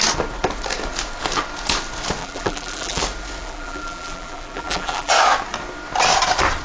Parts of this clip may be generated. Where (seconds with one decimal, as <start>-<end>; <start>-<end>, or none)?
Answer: 2.2-3.0; 3.4-5.1